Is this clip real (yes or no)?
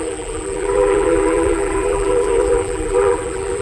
no